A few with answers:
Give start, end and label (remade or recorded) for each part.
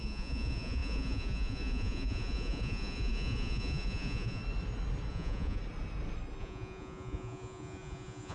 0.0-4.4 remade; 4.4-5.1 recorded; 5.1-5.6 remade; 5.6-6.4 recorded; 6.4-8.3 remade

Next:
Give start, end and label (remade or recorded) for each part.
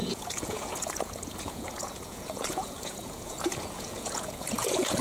0.0-5.0 remade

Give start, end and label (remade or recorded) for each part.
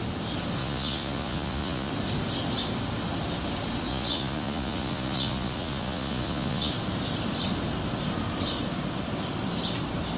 0.0-0.6 recorded; 0.6-1.9 remade; 1.9-3.9 recorded; 3.9-6.7 remade; 6.7-10.2 recorded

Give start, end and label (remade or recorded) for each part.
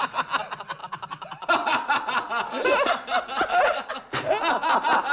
0.0-5.1 recorded